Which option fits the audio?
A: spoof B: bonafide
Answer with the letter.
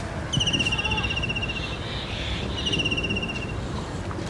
B